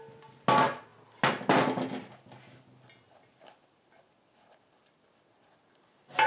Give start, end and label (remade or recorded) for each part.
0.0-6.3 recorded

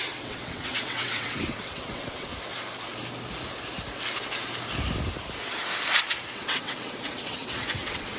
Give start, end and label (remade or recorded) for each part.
0.0-2.3 remade; 2.3-6.3 recorded; 6.3-8.2 remade